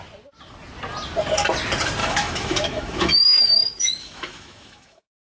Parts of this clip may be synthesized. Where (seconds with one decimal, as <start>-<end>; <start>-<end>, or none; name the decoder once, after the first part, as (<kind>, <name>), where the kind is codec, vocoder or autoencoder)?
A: 2.0-5.2 (autoencoder, DAC-VAE)

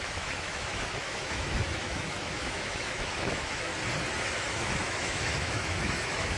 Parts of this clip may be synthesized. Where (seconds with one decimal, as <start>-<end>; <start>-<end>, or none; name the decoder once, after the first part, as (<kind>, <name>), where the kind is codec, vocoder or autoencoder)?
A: 0.0-3.7 (autoencoder, DAC-VAE); 4.3-6.4

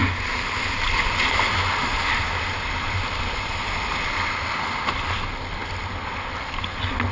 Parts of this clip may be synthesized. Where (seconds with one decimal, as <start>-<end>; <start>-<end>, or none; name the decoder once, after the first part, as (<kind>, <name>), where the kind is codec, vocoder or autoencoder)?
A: none

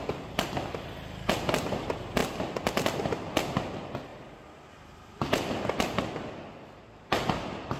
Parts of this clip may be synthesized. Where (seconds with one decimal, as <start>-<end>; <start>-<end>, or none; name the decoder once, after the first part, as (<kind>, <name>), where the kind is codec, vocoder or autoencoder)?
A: none

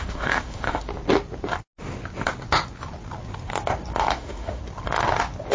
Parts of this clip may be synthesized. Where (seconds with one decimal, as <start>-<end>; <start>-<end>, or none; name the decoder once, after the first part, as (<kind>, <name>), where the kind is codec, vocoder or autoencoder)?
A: 0.0-0.9 (autoencoder, DAC-VAE); 4.1-4.6

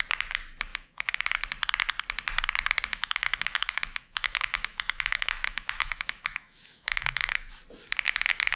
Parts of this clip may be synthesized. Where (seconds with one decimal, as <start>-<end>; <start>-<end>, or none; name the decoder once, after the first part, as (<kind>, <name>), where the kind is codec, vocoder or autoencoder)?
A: 0.7-1.2 (autoencoder, DAC-VAE); 2.9-7.5

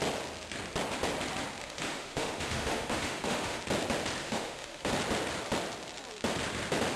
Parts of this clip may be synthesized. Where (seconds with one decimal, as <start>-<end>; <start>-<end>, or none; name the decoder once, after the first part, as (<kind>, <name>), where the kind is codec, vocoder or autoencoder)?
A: 1.6-3.6 (autoencoder, DAC-VAE); 4.2-4.9

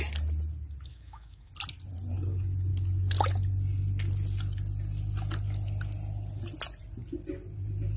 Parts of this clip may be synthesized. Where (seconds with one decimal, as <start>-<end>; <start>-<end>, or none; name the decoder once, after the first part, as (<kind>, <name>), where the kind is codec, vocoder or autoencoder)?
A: 0.9-1.5 (autoencoder, DAC-VAE)